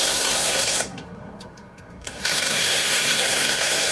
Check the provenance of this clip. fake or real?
fake